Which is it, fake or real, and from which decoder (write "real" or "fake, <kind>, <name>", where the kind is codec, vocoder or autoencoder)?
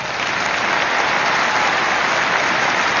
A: real